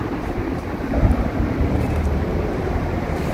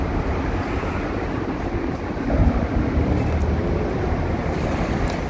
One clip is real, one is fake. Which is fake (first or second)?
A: first